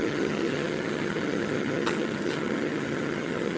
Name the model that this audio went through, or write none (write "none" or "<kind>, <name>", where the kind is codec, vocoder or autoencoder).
vocoder, HiFi-GAN